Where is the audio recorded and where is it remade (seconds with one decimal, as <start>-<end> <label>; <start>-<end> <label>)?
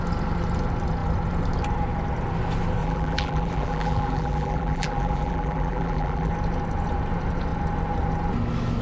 0.0-2.8 recorded; 2.8-6.3 remade; 6.3-8.8 recorded